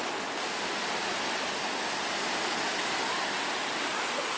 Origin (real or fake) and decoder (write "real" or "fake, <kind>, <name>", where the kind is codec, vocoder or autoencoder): real